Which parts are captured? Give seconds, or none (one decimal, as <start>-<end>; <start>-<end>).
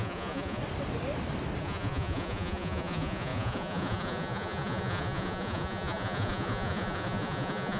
0.6-1.6